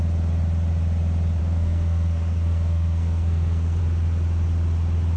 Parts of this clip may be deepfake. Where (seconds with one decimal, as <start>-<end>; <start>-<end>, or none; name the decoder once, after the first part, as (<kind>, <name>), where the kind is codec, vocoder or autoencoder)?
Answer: 1.4-3.8 (codec, SNAC)

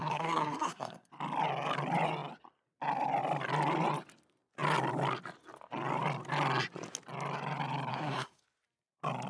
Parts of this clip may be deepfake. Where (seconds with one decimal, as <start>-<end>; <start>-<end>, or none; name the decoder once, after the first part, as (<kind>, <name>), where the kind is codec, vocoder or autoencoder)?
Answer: 0.0-1.1 (codec, SNAC); 7.9-8.4

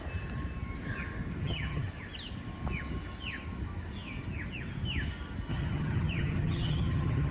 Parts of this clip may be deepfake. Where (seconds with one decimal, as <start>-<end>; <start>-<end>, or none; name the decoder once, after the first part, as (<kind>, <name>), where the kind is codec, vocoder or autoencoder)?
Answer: 1.4-1.9 (vocoder, HiFi-GAN); 5.5-7.3

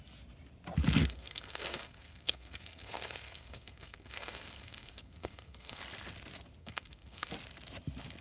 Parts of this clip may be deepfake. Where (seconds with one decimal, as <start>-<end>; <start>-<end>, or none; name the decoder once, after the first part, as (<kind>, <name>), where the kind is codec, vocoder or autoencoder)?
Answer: 1.0-5.8 (codec, SNAC); 6.6-7.3

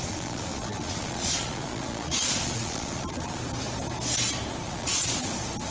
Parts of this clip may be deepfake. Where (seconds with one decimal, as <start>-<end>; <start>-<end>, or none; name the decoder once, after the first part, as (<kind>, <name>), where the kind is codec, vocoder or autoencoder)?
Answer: 0.0-3.4 (vocoder, Vocos); 4.6-5.3

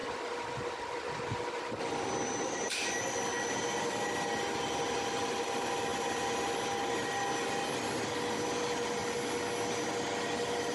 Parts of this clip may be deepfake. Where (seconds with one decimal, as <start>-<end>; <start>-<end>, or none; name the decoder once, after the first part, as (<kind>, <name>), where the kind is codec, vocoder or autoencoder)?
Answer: none

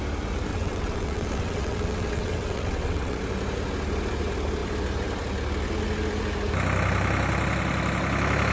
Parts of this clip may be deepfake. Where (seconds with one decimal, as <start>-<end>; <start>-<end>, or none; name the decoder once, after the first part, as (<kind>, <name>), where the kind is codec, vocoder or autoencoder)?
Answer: 0.5-3.2 (vocoder, WaveNeXt)

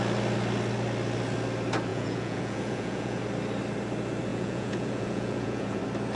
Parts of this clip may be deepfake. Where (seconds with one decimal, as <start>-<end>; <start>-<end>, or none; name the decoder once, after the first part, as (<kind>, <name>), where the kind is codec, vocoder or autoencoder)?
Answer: 1.9-3.2 (vocoder, Vocos); 4.3-5.8